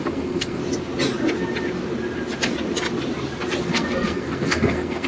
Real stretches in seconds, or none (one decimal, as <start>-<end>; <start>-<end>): 0.6-3.7